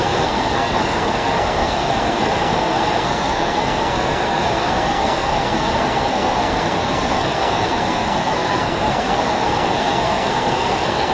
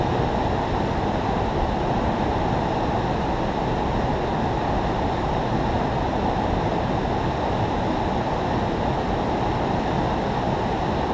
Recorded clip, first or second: second